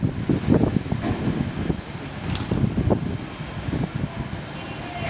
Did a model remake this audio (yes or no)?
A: no